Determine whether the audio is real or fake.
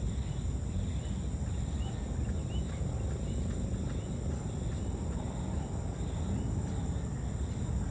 real